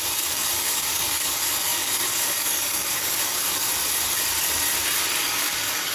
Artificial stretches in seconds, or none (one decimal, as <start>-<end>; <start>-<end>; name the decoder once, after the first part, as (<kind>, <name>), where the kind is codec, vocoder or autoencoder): 0.0-3.7 (codec, DAC); 5.2-5.9